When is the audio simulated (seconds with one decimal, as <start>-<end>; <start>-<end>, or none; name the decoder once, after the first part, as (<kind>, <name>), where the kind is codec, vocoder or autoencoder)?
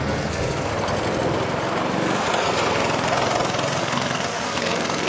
0.0-0.7 (codec, SNAC); 3.8-5.1